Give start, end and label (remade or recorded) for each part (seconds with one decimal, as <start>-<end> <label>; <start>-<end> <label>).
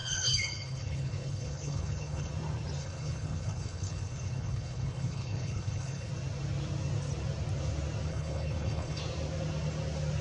0.0-2.3 remade; 2.3-2.8 recorded; 2.8-6.1 remade; 6.1-8.1 recorded; 8.1-9.0 remade; 9.0-10.2 recorded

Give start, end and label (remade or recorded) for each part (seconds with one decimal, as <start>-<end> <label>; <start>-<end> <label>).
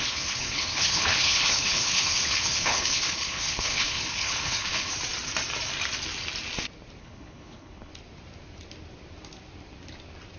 0.0-4.9 remade; 4.9-7.0 recorded; 7.0-7.9 remade; 7.9-10.4 recorded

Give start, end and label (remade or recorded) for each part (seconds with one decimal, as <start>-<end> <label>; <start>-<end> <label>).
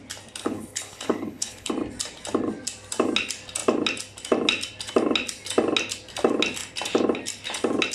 0.0-0.4 recorded; 0.4-1.7 remade; 1.7-7.9 recorded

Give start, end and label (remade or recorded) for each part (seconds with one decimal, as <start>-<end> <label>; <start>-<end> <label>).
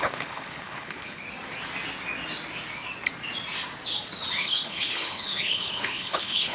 0.0-1.2 remade; 1.2-4.4 recorded; 4.4-6.5 remade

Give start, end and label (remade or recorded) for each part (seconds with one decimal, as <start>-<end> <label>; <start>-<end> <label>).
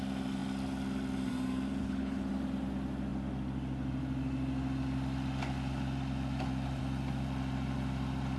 0.0-1.8 recorded; 1.8-2.3 remade; 2.3-8.4 recorded